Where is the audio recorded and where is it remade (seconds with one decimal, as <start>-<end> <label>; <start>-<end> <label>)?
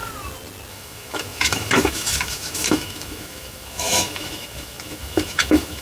0.0-0.7 recorded; 0.7-5.8 remade